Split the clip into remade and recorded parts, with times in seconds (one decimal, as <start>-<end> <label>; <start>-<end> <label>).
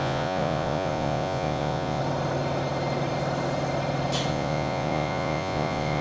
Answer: 0.0-2.0 remade; 2.0-4.3 recorded; 4.3-6.0 remade